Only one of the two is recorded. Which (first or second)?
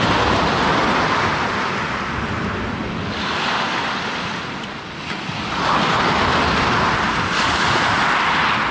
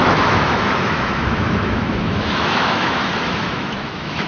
first